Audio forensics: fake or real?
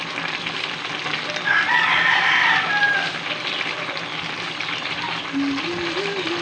fake